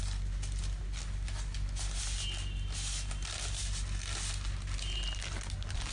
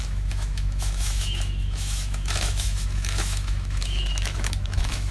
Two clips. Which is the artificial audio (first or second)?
second